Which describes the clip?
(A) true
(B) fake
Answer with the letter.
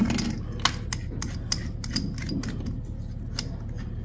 A